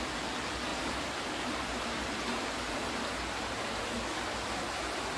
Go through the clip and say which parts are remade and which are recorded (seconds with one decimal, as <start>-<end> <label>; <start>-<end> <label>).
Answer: 0.0-0.7 recorded; 0.7-3.8 remade; 3.8-5.2 recorded